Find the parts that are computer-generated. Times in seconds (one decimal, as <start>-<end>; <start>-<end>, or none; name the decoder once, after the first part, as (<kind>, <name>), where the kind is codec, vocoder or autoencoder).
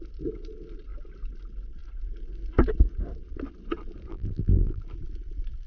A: 4.1-4.8 (vocoder, BigVGAN v2)